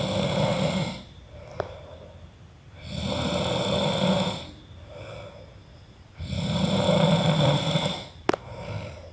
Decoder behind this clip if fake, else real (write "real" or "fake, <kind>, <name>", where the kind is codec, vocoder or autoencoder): real